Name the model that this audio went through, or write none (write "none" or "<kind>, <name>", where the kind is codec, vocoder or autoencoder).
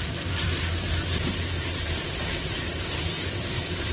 vocoder, BigVGAN v2